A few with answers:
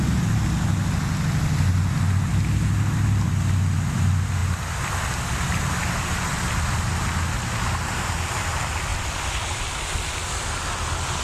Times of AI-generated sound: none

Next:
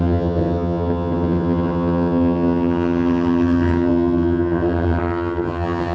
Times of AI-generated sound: 0.0-5.9 (vocoder, HiFi-GAN)

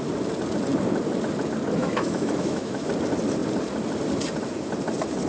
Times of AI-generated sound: 1.8-2.9 (autoencoder, DAC-VAE)

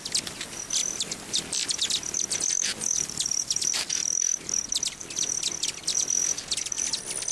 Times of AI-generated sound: 0.8-3.4 (vocoder, BigVGAN v2); 4.0-5.9

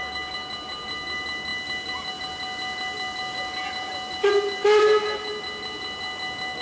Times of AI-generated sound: none